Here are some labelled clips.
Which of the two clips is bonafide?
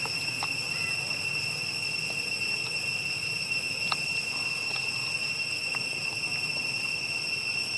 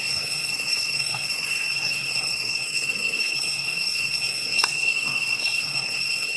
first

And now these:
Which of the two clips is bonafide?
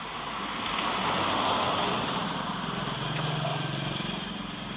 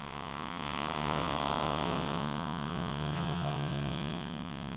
first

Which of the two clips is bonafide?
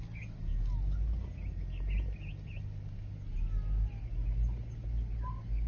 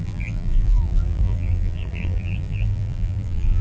first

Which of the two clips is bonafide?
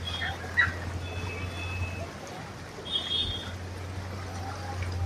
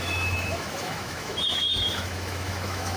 first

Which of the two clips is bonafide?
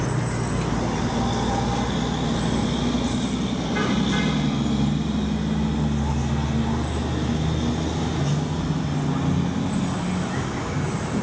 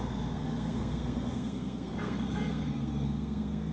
first